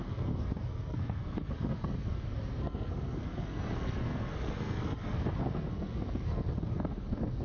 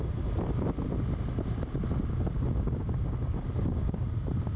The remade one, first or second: first